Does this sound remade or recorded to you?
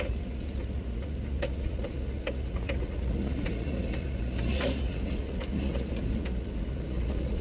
remade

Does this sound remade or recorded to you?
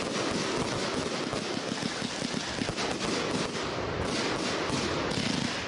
recorded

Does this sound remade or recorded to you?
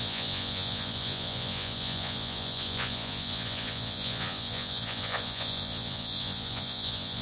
remade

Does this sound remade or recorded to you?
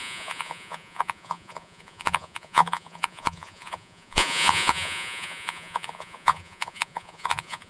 remade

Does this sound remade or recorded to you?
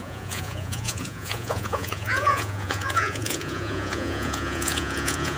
remade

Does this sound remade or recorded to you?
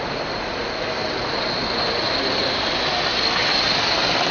recorded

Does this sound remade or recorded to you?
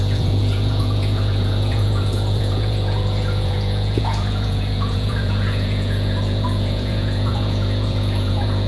remade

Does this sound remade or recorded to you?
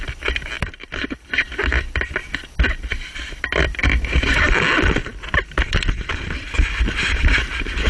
recorded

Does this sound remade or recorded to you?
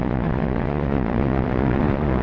remade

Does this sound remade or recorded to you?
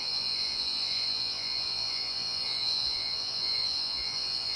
remade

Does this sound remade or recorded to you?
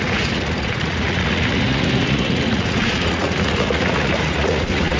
remade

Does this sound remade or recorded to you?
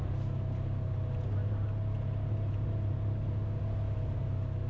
recorded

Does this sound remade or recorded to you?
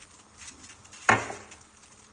recorded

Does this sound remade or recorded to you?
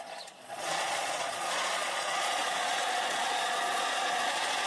remade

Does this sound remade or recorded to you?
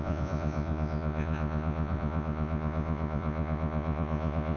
remade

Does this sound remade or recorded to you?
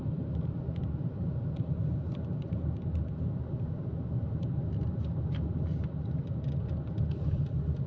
recorded